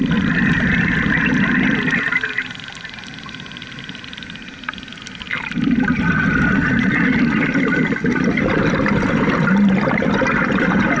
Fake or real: real